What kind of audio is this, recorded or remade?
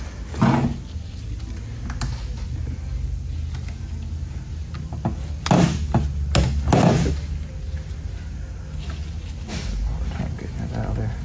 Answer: recorded